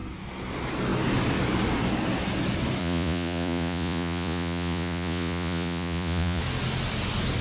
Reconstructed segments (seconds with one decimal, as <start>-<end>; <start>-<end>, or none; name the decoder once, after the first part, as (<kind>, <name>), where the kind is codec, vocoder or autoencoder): 2.8-6.4 (vocoder, Vocos)